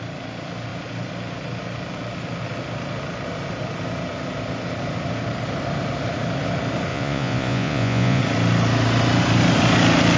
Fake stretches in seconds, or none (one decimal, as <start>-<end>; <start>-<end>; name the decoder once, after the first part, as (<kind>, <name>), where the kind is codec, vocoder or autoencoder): 6.9-8.2 (vocoder, Vocos)